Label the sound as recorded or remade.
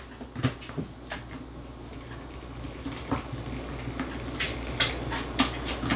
recorded